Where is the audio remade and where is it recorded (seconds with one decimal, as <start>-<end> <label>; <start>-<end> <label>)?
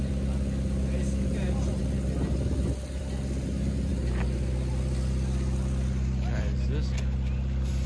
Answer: 0.0-7.9 recorded